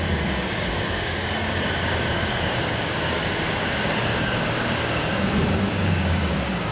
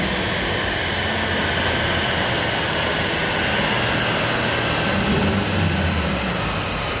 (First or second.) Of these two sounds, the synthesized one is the first